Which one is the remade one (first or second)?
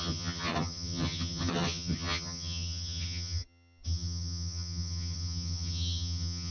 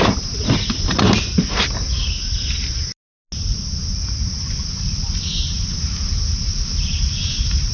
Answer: first